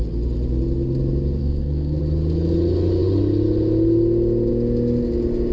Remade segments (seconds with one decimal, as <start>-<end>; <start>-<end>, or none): 1.4-2.0